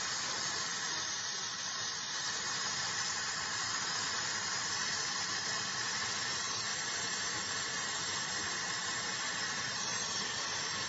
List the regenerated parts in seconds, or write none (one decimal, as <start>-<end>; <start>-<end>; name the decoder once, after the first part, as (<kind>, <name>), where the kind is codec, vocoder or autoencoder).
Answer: 4.3-5.7 (vocoder, BigVGAN v2)